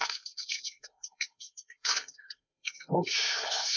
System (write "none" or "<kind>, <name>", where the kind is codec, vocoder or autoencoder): codec, SNAC